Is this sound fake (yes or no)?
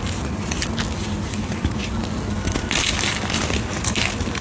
no